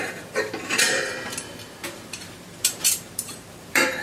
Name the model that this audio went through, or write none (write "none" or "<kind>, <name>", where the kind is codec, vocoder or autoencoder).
vocoder, BigVGAN v2